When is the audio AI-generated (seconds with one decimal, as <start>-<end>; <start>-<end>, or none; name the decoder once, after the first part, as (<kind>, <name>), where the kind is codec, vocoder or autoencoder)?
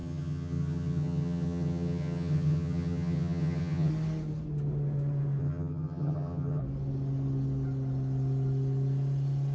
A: 0.0-3.9 (vocoder, HiFi-GAN); 5.4-6.6